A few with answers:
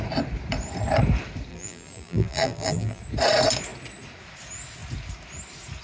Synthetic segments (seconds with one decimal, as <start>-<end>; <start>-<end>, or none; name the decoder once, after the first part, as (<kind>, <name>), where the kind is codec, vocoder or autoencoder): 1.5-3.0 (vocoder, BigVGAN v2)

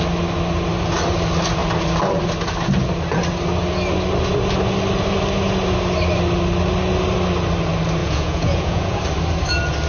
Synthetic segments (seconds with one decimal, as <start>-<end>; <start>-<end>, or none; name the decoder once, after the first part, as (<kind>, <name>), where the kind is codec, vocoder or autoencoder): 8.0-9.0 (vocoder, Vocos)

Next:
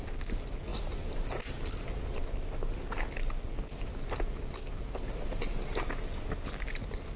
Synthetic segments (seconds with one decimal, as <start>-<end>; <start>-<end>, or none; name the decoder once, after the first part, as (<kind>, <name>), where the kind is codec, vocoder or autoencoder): none